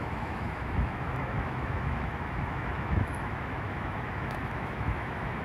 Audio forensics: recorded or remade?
remade